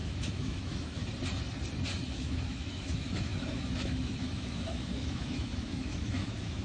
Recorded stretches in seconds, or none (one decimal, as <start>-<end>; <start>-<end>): 1.0-2.1